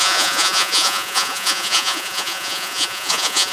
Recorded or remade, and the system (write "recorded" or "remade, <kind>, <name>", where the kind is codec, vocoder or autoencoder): remade, vocoder, Vocos